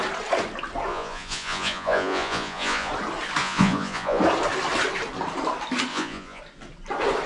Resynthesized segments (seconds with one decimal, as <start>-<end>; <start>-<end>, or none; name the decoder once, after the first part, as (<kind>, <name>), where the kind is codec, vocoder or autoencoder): 0.9-2.9 (vocoder, Vocos); 3.4-4.2; 5.9-6.4